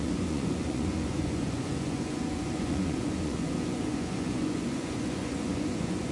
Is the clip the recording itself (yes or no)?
no